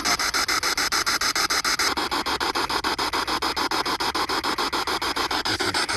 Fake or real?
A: real